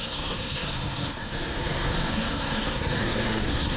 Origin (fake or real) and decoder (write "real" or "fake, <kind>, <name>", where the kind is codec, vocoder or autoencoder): fake, codec, SNAC